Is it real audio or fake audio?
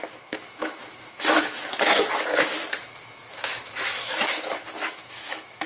fake